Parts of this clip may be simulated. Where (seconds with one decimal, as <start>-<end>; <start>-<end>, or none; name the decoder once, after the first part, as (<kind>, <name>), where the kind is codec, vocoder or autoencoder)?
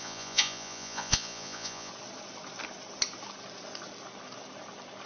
0.0-1.9 (vocoder, Vocos)